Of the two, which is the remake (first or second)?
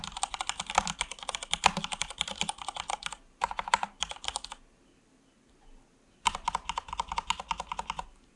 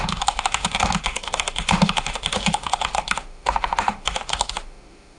second